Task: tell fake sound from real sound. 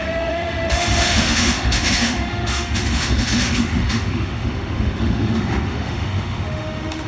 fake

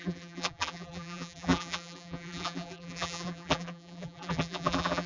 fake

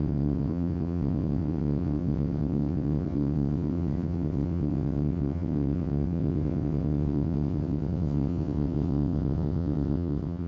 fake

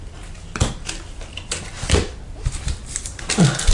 real